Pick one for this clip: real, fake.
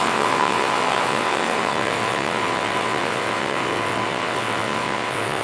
fake